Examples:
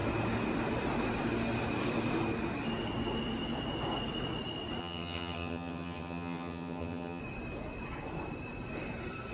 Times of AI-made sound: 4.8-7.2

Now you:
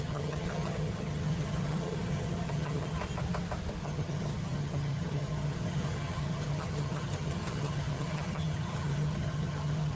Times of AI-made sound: 0.0-3.0; 3.8-10.0

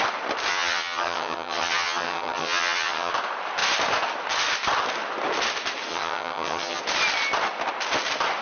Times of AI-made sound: 0.5-3.1; 5.9-6.8

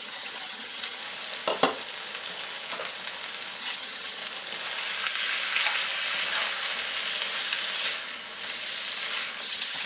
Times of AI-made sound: 0.0-1.0; 3.6-4.2; 9.4-9.9

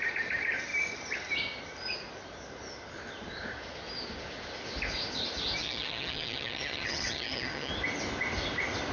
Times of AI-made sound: 5.6-7.7